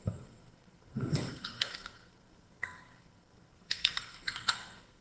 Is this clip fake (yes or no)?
yes